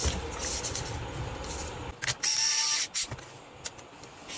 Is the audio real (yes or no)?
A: yes